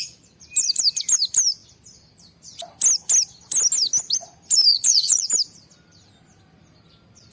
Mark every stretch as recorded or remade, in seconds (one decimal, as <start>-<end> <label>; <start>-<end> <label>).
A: 0.0-4.7 recorded; 4.7-5.3 remade; 5.3-7.3 recorded